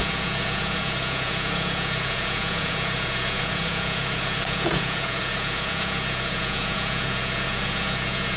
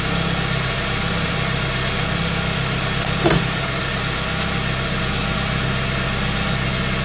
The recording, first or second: second